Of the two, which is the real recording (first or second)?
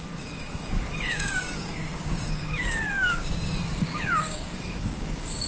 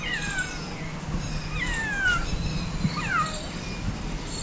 second